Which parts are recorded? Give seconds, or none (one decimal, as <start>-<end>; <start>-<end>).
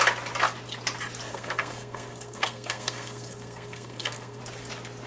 0.0-1.3; 4.4-5.1